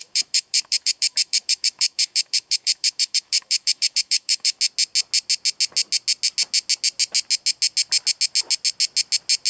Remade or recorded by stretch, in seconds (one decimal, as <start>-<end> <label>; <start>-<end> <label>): 0.0-4.6 remade; 4.6-9.5 recorded